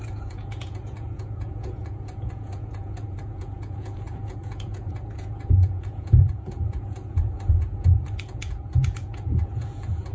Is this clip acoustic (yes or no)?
no